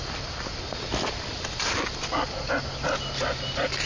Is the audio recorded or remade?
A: recorded